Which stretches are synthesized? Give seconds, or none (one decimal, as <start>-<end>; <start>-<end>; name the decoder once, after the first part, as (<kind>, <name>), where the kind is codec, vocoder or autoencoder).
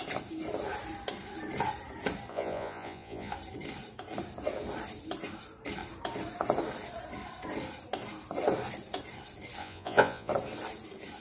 2.3-3.3 (vocoder, Vocos); 9.6-10.3